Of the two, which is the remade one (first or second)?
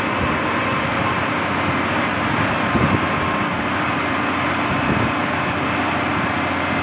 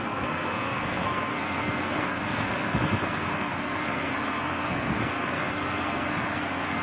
second